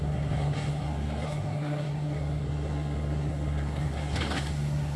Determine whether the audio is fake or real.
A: fake